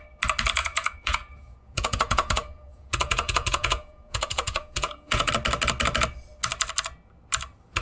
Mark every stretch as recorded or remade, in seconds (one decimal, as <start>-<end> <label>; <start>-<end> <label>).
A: 0.0-0.6 recorded; 0.6-5.3 remade; 5.3-7.8 recorded